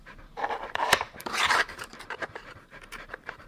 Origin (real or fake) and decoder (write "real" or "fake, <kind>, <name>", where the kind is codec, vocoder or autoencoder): fake, vocoder, BigVGAN v2